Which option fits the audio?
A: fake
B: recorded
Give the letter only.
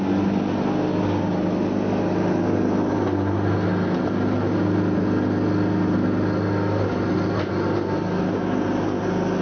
B